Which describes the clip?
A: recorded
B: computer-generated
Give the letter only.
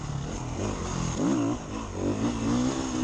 A